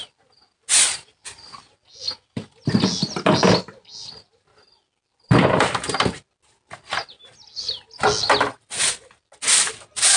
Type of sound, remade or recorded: recorded